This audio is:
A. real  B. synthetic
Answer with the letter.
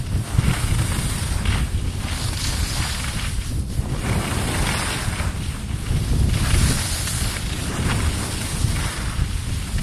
A